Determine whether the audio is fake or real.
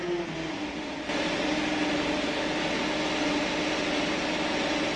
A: real